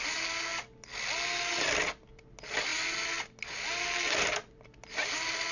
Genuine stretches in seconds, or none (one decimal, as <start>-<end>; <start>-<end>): 0.0-5.5